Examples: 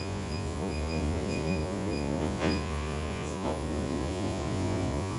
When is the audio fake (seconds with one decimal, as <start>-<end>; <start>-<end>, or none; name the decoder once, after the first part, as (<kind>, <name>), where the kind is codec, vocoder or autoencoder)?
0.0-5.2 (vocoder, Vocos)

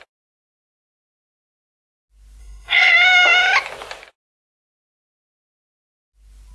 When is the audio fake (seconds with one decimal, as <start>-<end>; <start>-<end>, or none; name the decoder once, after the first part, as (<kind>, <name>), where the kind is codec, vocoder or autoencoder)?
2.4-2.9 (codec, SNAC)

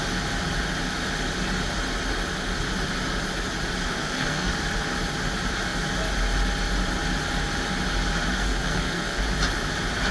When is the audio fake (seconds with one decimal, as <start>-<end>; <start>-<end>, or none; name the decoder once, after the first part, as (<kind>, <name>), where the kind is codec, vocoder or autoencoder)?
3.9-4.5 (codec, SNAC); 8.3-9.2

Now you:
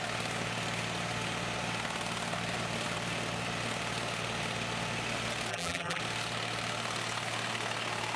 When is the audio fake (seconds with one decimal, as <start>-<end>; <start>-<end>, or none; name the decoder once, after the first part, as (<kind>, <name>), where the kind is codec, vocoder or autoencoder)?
5.5-6.0 (vocoder, BigVGAN v2)

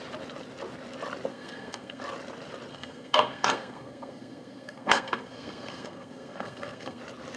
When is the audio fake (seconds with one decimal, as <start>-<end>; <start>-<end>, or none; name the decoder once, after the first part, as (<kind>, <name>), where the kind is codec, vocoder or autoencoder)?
1.3-2.0 (codec, SNAC); 2.7-7.0

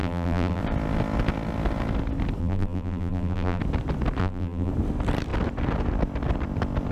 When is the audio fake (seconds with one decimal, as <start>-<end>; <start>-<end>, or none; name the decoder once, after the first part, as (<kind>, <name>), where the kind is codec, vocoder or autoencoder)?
0.0-0.6 (vocoder, BigVGAN v2); 2.4-3.6; 4.2-4.7